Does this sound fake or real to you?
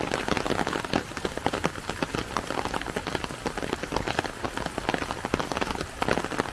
real